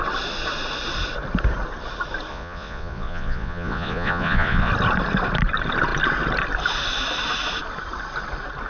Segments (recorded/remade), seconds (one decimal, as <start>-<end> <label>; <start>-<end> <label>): 0.0-2.3 recorded; 2.3-4.7 remade; 4.7-8.7 recorded